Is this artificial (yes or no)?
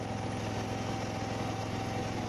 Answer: no